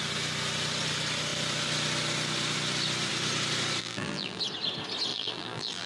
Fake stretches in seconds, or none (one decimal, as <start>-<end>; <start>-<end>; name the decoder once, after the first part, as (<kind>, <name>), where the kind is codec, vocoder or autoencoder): 3.8-4.4 (vocoder, BigVGAN v2); 5.1-5.9